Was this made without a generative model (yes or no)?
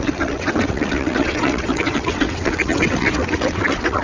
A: no